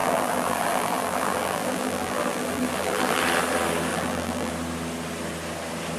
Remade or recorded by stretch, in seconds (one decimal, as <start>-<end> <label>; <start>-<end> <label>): 0.0-3.2 remade; 3.2-3.9 recorded; 3.9-4.5 remade; 4.5-6.0 recorded